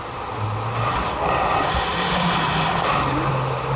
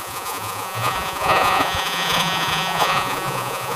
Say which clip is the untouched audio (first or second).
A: first